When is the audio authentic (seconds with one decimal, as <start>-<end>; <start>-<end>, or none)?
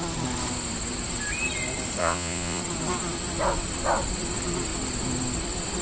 0.0-2.0; 2.6-5.8